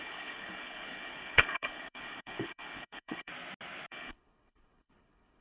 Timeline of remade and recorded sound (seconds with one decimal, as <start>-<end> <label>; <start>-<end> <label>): 0.0-3.3 remade; 3.3-3.9 recorded; 3.9-5.4 remade